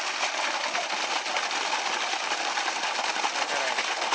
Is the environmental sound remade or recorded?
recorded